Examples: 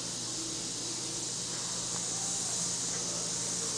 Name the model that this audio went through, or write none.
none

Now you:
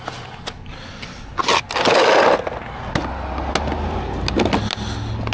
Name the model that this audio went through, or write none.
none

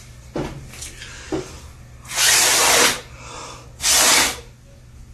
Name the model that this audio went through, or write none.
none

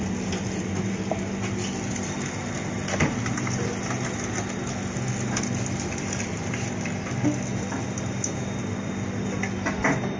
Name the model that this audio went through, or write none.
none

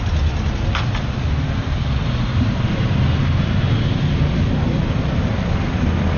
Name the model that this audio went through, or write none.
none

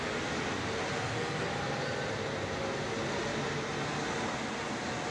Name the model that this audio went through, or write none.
none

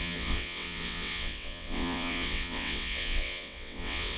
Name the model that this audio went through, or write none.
vocoder, WaveNeXt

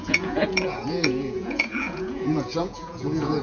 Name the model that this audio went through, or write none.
vocoder, Vocos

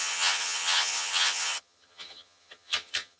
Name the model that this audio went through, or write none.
vocoder, HiFi-GAN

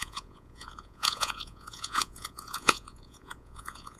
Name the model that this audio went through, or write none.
vocoder, Vocos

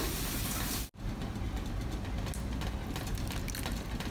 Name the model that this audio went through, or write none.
none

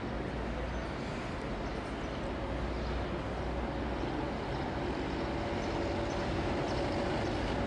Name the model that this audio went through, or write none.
none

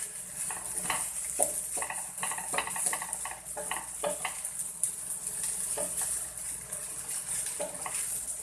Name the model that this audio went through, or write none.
none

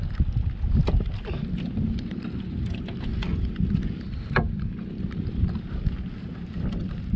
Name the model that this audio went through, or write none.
none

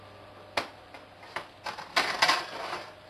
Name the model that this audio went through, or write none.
none